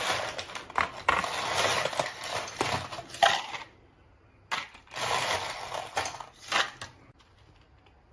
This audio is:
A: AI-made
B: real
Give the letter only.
B